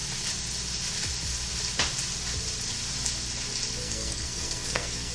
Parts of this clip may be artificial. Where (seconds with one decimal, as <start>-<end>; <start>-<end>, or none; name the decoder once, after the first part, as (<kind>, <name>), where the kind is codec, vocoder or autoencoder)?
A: 3.8-5.1 (codec, SNAC)

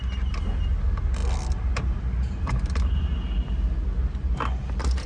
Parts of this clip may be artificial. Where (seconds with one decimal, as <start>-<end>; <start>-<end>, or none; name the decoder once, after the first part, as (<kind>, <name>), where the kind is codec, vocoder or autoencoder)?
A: none

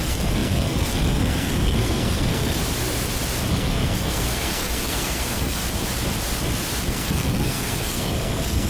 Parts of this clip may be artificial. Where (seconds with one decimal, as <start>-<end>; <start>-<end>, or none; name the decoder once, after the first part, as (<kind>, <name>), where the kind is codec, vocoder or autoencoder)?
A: 0.0-2.6 (codec, SNAC); 3.5-5.6; 6.9-8.7

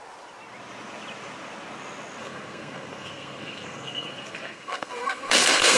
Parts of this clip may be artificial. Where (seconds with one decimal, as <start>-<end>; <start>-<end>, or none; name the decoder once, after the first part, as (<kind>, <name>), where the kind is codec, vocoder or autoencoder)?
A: 2.2-5.8 (codec, SNAC)

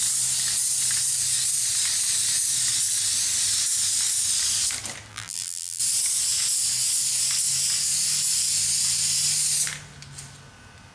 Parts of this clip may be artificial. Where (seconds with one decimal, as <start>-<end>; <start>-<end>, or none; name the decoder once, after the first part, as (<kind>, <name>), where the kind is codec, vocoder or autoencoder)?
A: 5.1-5.8 (vocoder, BigVGAN v2)

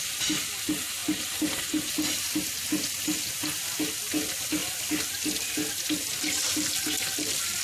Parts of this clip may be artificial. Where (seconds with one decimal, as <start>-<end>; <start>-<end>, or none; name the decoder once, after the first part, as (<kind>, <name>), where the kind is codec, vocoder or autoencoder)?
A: none

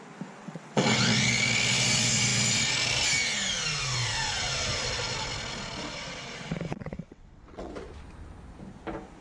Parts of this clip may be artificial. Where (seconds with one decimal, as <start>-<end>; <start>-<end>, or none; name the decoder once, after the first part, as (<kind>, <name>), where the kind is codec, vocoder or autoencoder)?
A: 0.4-1.0 (vocoder, WaveNeXt); 6.7-7.7

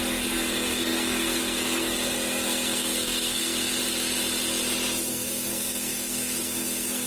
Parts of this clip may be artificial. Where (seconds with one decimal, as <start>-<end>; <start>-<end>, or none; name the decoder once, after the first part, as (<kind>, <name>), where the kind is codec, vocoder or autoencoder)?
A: 0.0-3.8 (codec, SNAC); 5.1-7.1